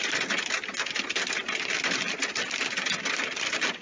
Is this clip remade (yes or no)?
no